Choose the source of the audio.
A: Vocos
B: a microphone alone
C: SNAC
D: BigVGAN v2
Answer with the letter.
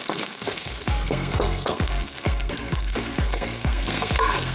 C